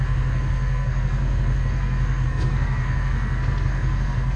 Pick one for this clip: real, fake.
fake